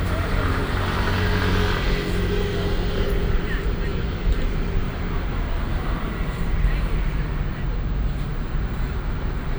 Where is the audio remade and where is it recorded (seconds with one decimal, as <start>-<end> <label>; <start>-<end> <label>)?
0.0-0.6 remade; 0.6-2.9 recorded; 2.9-9.6 remade